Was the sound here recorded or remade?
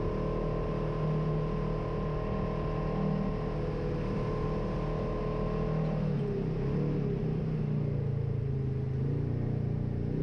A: recorded